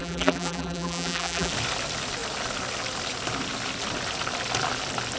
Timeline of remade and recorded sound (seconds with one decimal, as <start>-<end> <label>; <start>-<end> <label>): 0.0-1.5 remade; 1.5-5.2 recorded